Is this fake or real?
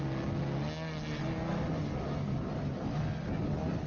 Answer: real